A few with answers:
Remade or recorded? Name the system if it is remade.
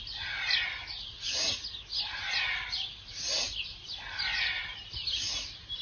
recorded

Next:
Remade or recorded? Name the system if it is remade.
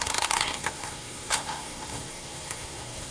remade, codec, SNAC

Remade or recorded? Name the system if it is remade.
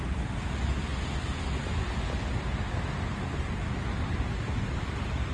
recorded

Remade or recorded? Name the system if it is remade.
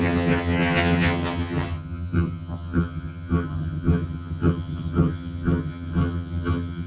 remade, vocoder, HiFi-GAN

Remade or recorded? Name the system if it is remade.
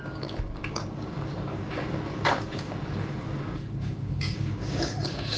remade, codec, DAC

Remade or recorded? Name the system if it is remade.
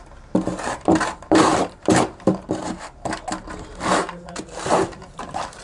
remade, vocoder, BigVGAN v2